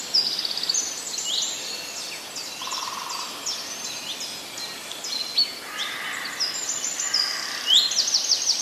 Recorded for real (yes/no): yes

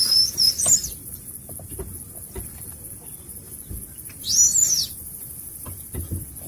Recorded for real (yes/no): yes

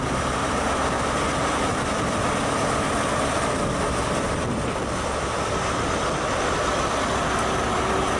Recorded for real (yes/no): no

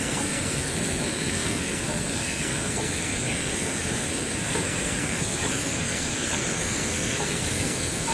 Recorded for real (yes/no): no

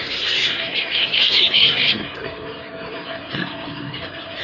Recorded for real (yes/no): no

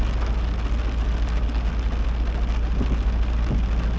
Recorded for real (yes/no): yes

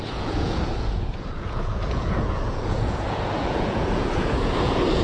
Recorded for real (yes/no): no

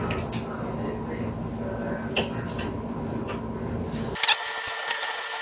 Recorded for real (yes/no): yes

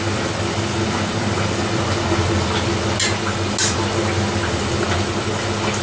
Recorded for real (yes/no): yes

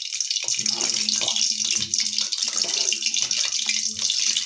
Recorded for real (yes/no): yes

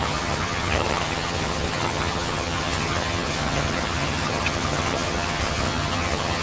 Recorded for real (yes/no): no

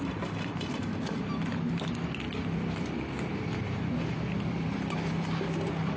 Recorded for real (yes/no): yes